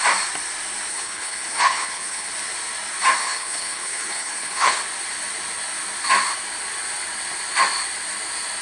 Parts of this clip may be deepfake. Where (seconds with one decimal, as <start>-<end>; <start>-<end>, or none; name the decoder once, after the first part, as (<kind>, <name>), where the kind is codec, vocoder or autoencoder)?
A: 0.9-2.3 (codec, HILCodec); 3.2-4.8